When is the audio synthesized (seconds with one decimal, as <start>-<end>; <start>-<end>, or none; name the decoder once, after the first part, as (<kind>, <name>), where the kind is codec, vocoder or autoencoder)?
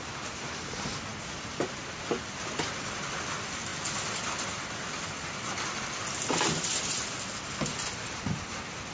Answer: none